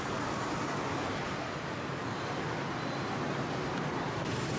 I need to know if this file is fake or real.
real